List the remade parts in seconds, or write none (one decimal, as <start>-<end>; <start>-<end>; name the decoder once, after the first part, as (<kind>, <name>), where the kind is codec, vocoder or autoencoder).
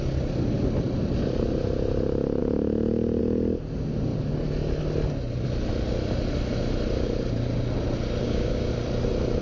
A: 8.2-8.7 (codec, DAC)